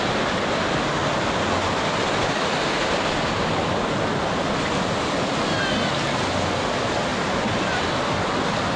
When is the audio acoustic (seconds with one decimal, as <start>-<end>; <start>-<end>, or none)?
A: 0.0-8.8